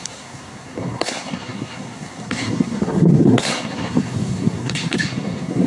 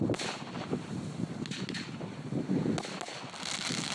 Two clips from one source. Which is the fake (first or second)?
first